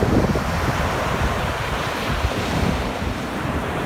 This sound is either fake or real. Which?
fake